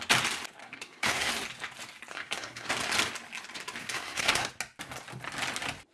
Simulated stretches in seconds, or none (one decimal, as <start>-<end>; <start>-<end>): 0.6-1.3; 2.1-2.7; 3.8-4.5